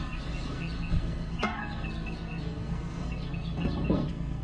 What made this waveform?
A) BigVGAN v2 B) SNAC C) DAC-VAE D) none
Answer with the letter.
B